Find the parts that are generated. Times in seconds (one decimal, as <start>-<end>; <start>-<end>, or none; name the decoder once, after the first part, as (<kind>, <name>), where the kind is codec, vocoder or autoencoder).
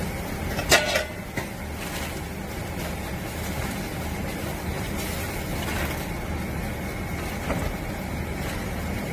0.0-0.6 (vocoder, BigVGAN v2); 2.4-5.5; 7.3-9.1